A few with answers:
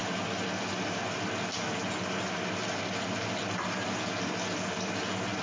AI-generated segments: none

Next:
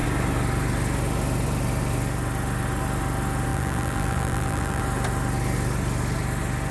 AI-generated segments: 3.5-4.8 (vocoder, BigVGAN v2)